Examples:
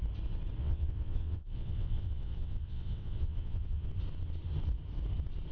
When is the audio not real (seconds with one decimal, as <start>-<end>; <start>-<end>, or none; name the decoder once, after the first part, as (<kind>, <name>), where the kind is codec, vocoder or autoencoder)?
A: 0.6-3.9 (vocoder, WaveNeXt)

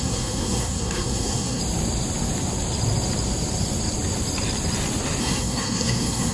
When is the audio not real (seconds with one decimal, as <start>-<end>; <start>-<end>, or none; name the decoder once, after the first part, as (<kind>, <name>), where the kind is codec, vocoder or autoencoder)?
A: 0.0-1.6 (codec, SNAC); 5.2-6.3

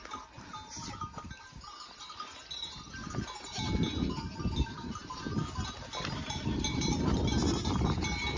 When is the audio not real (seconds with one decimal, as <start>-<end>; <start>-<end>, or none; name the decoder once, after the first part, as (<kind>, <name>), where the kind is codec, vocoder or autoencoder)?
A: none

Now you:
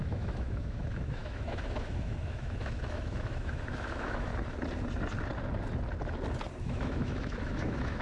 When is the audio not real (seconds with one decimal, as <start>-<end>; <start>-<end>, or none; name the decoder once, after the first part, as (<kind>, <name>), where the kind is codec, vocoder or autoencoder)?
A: 0.0-4.3 (autoencoder, DAC-VAE); 6.6-8.0

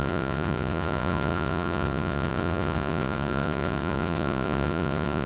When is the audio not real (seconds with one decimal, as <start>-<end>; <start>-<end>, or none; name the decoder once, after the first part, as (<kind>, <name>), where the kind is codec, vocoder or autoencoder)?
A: 0.0-5.3 (vocoder, Vocos)

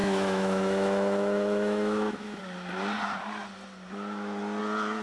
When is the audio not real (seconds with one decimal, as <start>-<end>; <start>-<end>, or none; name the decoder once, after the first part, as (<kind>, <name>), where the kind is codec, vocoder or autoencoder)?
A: 0.0-2.4 (autoencoder, DAC-VAE)

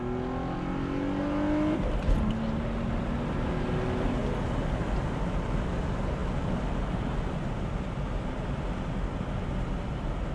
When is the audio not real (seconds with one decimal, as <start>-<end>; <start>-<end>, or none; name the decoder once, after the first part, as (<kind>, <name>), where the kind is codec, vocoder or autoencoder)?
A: none

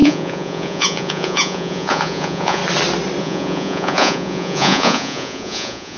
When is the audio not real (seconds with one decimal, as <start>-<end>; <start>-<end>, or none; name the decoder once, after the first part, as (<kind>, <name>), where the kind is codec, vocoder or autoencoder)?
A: 0.0-2.6 (vocoder, Vocos); 3.2-6.0